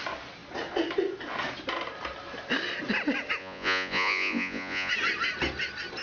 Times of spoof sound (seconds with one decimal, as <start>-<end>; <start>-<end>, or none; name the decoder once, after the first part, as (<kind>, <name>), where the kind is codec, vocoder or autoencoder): 3.4-4.9 (vocoder, Vocos)

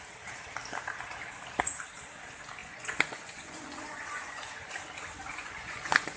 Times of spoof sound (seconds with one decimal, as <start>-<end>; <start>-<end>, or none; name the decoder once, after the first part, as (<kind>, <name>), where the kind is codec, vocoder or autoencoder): 2.6-4.7 (vocoder, Vocos); 5.3-6.2

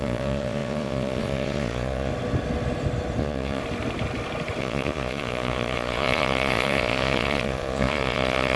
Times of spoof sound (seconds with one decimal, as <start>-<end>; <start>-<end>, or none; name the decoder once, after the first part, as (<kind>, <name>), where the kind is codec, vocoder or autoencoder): 0.0-2.1 (vocoder, Vocos); 3.2-3.6; 4.6-8.6